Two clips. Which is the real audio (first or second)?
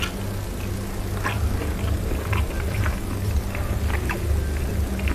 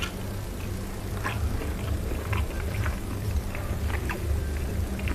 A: first